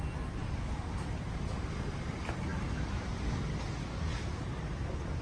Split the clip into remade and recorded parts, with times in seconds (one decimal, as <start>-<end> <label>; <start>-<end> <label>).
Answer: 0.0-0.4 recorded; 0.4-0.9 remade; 0.9-5.2 recorded

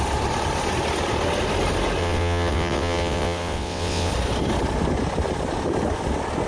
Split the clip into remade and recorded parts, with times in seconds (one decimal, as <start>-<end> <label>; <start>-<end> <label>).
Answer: 0.0-2.0 recorded; 2.0-4.1 remade; 4.1-6.5 recorded

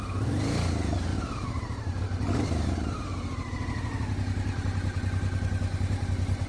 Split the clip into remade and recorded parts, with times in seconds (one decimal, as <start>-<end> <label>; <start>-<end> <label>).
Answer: 0.0-1.1 recorded; 1.1-2.0 remade; 2.0-6.5 recorded

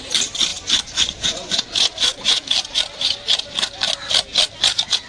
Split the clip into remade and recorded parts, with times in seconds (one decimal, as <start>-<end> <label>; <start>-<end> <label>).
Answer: 0.0-0.5 recorded; 0.5-2.4 remade; 2.4-5.1 recorded

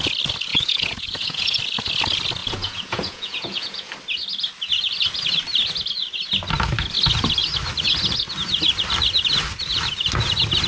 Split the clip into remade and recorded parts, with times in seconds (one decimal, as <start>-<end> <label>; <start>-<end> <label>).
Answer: 0.0-0.5 recorded; 0.5-1.6 remade; 1.6-2.4 recorded; 2.4-3.9 remade; 3.9-10.7 recorded